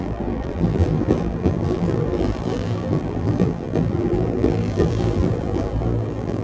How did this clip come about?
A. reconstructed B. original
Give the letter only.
A